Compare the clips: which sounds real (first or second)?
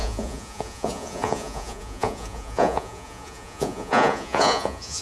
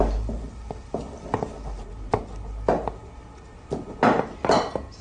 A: second